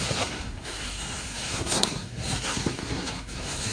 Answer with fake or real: fake